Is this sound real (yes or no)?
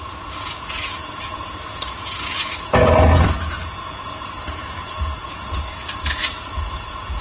no